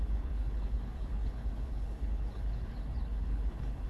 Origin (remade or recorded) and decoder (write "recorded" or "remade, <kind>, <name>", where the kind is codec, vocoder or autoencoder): remade, codec, HILCodec